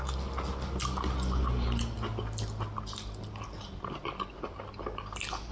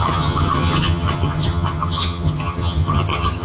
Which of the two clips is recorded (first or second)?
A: first